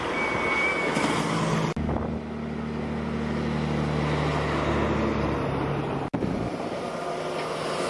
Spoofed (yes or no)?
no